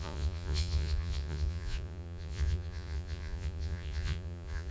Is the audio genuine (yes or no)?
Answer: no